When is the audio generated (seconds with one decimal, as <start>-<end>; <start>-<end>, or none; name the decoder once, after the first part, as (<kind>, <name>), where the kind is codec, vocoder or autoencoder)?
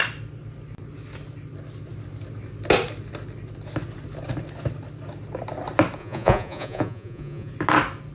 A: 6.0-7.5 (vocoder, Vocos)